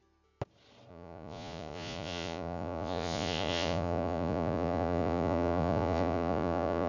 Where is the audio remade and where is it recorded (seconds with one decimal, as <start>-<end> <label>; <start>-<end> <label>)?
0.0-0.9 recorded; 0.9-6.9 remade